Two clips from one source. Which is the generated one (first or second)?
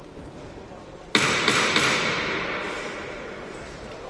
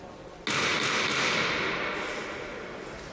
first